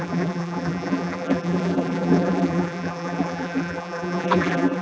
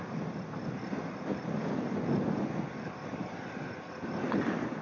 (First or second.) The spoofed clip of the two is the first